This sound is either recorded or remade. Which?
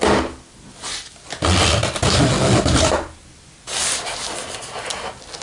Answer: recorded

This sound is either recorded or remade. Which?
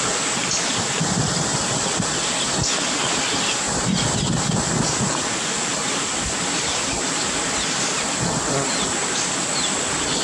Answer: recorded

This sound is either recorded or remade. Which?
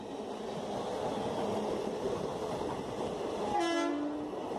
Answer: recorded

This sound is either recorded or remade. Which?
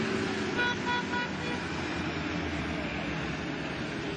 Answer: recorded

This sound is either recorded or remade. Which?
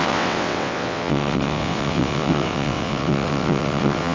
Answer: remade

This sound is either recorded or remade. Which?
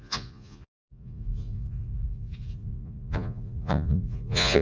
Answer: remade